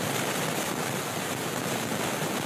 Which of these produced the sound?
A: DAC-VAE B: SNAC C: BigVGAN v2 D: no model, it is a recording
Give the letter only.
D